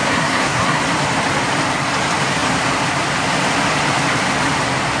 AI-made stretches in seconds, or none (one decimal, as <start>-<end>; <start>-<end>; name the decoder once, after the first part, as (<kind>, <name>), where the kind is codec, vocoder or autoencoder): 0.0-0.8 (codec, SNAC)